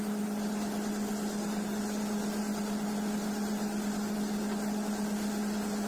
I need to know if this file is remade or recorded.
recorded